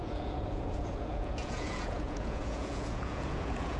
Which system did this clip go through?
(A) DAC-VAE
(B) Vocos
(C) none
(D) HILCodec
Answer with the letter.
B